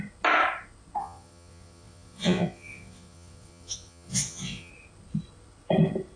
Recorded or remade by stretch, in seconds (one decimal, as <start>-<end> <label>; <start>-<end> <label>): 0.0-1.0 recorded; 1.0-4.7 remade; 4.7-6.2 recorded